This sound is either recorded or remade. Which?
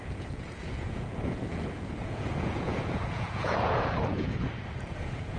remade